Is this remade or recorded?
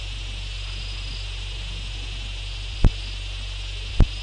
recorded